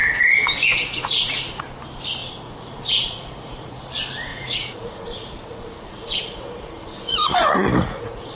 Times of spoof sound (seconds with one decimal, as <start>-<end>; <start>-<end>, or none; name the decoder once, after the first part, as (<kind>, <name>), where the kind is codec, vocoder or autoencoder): 0.0-1.6 (vocoder, Vocos); 2.2-3.8; 4.3-8.4